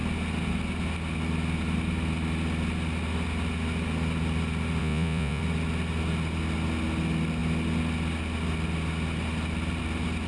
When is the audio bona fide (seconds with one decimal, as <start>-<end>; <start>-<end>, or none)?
0.0-4.8; 5.4-10.3